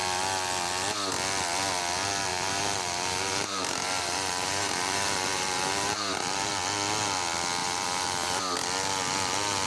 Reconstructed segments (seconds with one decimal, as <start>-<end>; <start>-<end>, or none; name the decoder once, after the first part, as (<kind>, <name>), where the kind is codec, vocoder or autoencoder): 2.3-6.5 (vocoder, BigVGAN v2); 7.6-8.4

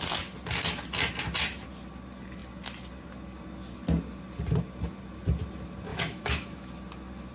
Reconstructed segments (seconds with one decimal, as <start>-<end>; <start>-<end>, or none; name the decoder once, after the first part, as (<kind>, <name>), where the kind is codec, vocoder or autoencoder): 5.9-6.7 (autoencoder, DAC-VAE)

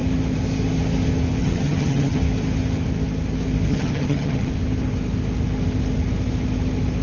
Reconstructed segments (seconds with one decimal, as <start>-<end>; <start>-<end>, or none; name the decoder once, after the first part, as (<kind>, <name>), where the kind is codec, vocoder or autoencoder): 1.4-2.2 (vocoder, HiFi-GAN); 3.7-4.5

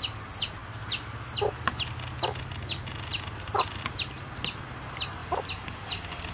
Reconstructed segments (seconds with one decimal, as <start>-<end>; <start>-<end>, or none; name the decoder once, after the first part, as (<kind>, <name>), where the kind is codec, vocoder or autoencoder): none

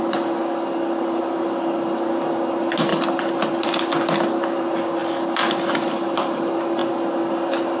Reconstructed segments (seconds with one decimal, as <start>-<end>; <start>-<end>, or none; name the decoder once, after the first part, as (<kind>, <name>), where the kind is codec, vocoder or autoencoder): none

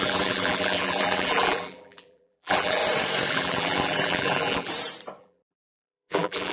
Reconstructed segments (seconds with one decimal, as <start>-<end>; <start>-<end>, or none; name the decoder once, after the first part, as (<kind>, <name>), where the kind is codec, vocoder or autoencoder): 0.0-2.8 (vocoder, BigVGAN v2); 3.3-4.7; 5.2-6.5

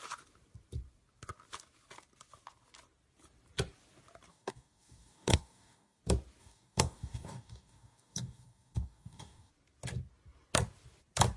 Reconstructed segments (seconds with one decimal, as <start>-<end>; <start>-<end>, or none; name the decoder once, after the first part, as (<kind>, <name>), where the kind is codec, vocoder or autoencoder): 4.3-6.0 (codec, DAC); 6.4-9.5

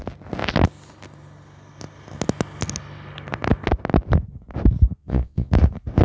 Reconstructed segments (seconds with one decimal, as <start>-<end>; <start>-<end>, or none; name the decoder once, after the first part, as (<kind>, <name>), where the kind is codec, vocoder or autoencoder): 5.0-5.5 (vocoder, Vocos)